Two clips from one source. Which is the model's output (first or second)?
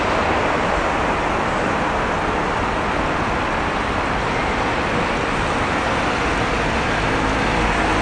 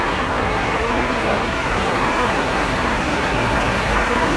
second